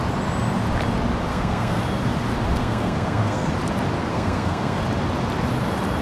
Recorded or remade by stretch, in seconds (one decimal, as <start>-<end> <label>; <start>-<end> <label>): 0.0-1.3 recorded; 1.3-1.8 remade; 1.8-2.6 recorded; 2.6-3.5 remade; 3.5-4.1 recorded; 4.1-4.8 remade; 4.8-6.0 recorded